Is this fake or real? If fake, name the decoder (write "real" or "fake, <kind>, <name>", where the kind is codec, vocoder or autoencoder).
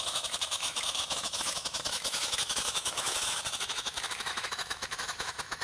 fake, autoencoder, DAC-VAE